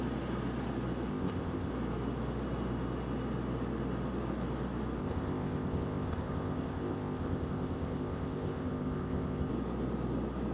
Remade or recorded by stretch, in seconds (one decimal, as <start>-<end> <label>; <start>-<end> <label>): 0.0-1.1 recorded; 1.1-1.7 remade; 1.7-5.0 recorded; 5.0-9.5 remade; 9.5-10.5 recorded